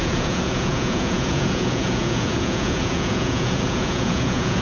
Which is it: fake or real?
fake